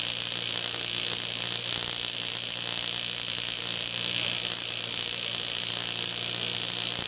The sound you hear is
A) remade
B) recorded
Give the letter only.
B